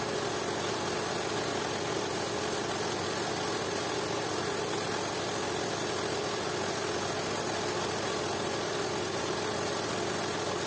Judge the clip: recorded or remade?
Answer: recorded